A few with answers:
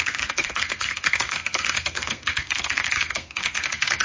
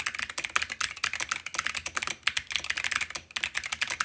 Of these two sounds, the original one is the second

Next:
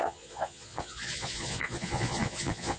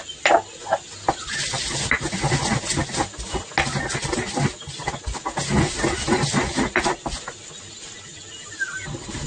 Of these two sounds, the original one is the second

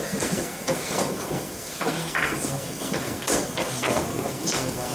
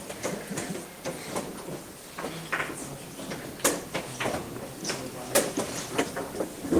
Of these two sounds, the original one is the second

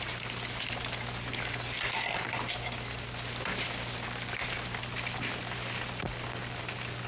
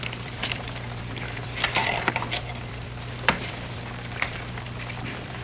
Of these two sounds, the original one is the first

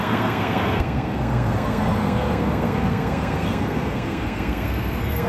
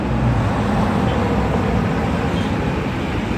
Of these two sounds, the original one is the second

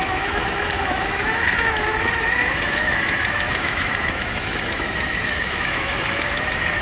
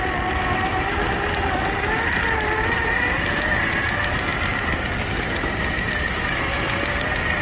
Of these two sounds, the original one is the second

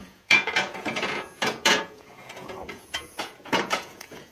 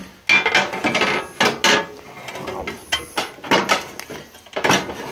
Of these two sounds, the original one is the second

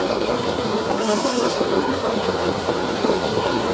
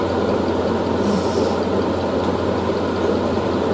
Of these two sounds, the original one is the second